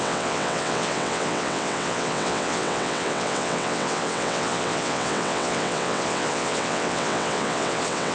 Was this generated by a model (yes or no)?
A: yes